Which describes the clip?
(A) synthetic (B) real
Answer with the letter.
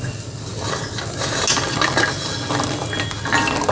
B